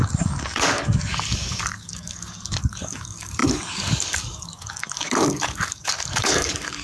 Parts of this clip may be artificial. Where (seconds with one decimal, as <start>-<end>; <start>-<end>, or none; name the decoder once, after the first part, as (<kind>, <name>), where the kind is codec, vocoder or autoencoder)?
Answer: 0.0-6.8 (codec, DAC)